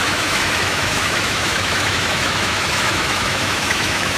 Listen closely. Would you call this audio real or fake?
fake